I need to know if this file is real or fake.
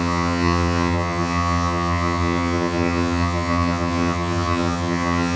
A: fake